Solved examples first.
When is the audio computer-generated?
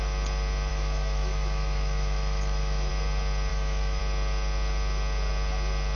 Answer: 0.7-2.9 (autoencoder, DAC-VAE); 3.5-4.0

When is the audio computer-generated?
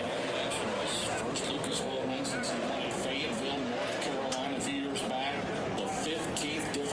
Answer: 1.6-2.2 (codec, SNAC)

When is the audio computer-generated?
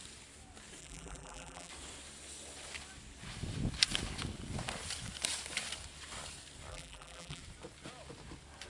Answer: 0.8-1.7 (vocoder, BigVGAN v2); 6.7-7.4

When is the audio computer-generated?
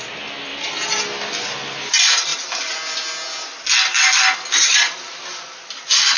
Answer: none